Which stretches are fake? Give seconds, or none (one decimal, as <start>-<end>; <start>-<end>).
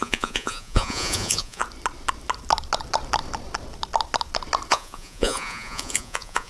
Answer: 0.0-1.6; 4.7-6.5